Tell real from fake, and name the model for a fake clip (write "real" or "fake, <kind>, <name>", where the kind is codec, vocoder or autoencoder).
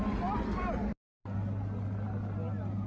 real